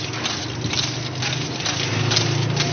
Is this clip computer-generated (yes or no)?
no